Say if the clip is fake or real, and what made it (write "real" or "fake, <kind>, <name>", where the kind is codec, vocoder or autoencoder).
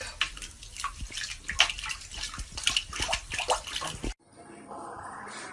real